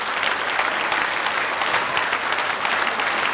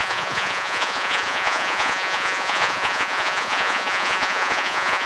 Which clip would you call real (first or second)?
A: first